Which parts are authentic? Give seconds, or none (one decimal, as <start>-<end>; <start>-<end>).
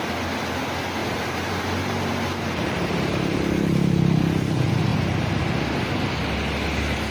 0.0-1.0; 4.2-4.9; 5.4-7.1